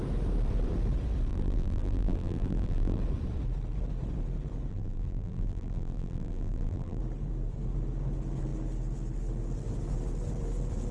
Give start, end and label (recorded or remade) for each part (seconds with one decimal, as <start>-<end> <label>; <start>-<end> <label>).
0.0-1.3 recorded; 1.3-3.0 remade; 3.0-4.7 recorded; 4.7-7.0 remade; 7.0-10.9 recorded